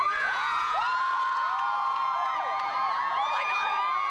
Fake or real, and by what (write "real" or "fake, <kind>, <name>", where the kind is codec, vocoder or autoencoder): fake, vocoder, Vocos